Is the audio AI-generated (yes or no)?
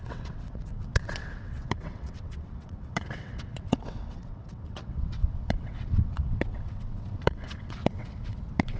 yes